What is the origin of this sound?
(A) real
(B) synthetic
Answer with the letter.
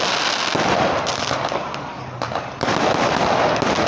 A